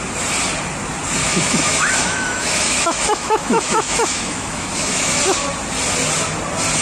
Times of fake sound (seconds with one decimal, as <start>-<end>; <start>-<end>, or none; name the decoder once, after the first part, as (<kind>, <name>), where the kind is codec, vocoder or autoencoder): 1.2-5.2 (autoencoder, DAC-VAE)